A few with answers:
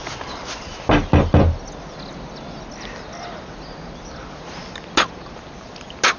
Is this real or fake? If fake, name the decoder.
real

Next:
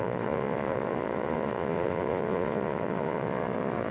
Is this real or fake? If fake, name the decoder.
fake, vocoder, Vocos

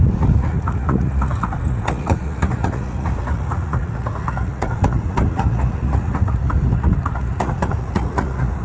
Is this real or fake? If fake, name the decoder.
fake, vocoder, Vocos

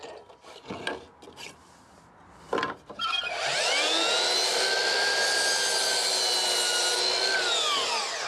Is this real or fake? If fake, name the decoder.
real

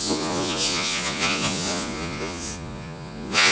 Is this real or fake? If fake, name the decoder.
fake, vocoder, Vocos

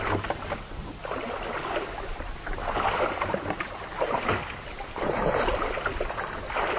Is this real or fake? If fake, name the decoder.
real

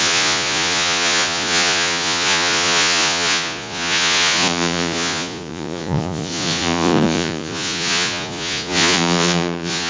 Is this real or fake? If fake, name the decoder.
fake, vocoder, Vocos